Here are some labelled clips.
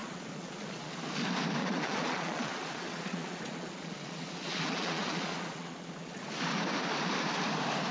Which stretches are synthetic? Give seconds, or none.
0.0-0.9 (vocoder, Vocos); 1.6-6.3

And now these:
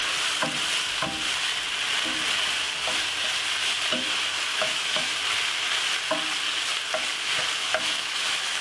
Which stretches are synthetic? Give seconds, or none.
4.5-5.1 (autoencoder, DAC-VAE); 7.6-8.6

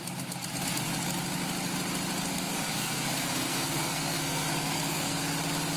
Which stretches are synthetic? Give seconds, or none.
2.3-5.2 (codec, SNAC)

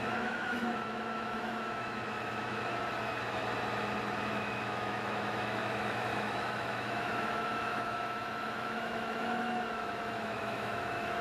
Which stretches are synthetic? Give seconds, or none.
0.0-2.8 (autoencoder, DAC-VAE); 4.3-11.2

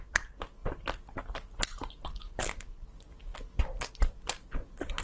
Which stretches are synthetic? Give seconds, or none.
none